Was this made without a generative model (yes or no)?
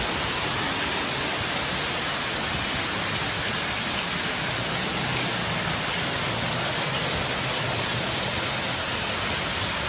yes